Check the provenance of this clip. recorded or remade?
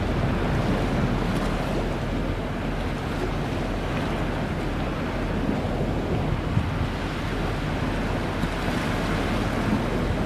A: recorded